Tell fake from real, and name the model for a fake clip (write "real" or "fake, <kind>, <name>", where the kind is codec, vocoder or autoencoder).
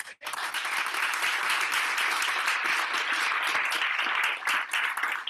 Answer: real